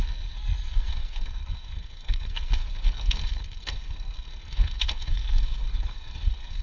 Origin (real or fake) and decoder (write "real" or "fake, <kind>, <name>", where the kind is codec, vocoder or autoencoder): fake, codec, SNAC